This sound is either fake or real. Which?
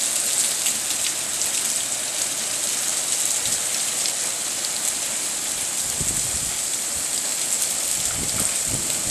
real